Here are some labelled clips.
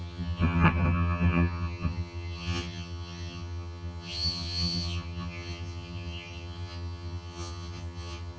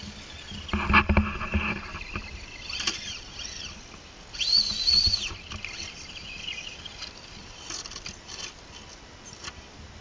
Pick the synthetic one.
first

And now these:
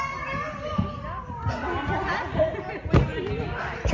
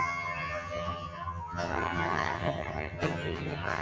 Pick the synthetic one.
second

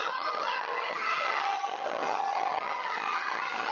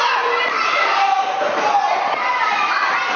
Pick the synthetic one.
first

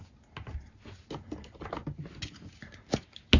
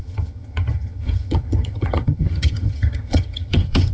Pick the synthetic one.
second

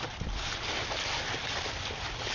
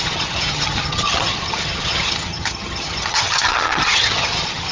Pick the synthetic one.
second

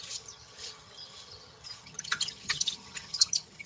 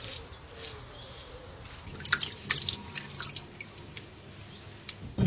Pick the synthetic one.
first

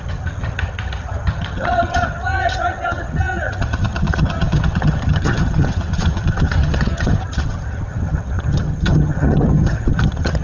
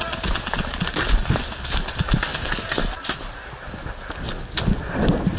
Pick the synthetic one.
first